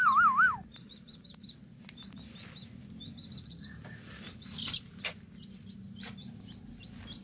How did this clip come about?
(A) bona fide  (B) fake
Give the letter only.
A